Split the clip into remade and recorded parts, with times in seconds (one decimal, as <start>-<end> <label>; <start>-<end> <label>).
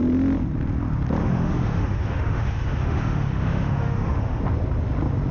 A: 0.0-1.2 recorded; 1.2-4.4 remade; 4.4-5.3 recorded